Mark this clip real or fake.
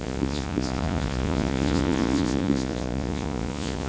fake